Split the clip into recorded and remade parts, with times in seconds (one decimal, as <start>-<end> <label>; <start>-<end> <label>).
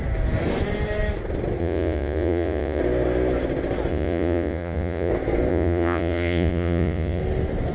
0.0-1.6 recorded; 1.6-2.8 remade; 2.8-3.9 recorded; 3.9-5.1 remade; 5.1-5.5 recorded; 5.5-7.2 remade; 7.2-7.7 recorded